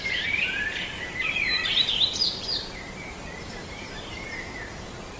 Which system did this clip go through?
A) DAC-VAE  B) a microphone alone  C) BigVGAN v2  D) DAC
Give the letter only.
C